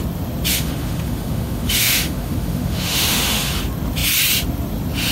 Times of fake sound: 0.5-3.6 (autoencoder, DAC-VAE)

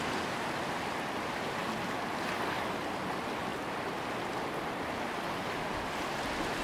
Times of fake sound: none

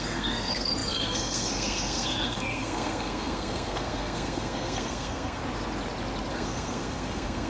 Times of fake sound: 0.0-5.4 (codec, SNAC); 6.3-7.5

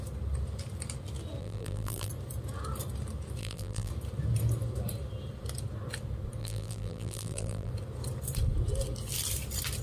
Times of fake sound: 1.4-2.1 (vocoder, BigVGAN v2); 3.4-3.9; 6.4-7.7

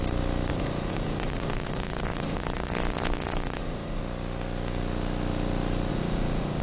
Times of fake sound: 0.5-4.0 (vocoder, Vocos); 5.9-6.6

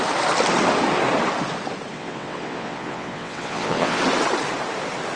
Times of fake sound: 1.9-4.0 (vocoder, WaveNeXt)

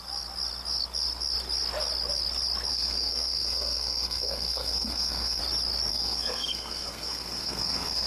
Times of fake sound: 2.7-5.4 (codec, SNAC); 5.9-8.1

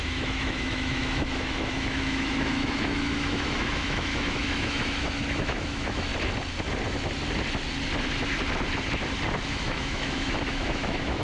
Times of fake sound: 0.0-6.1 (autoencoder, DAC-VAE); 9.5-11.2